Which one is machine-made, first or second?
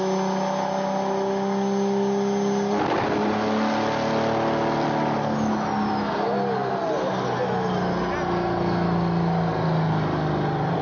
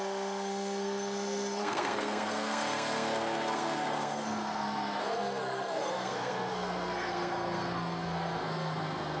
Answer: second